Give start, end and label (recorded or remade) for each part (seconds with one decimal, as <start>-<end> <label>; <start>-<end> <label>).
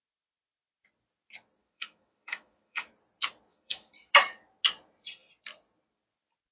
0.0-1.6 recorded; 1.6-2.9 remade; 2.9-3.5 recorded; 3.5-4.1 remade; 4.1-6.5 recorded